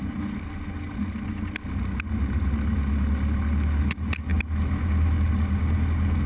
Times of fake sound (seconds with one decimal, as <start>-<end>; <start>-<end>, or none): none